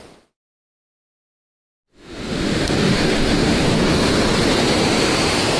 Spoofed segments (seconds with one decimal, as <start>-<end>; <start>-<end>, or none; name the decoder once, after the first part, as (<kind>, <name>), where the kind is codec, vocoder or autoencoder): 1.9-3.8 (autoencoder, DAC-VAE)